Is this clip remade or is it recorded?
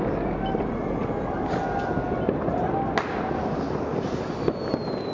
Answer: recorded